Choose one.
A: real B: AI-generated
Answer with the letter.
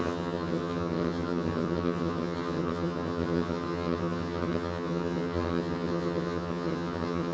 B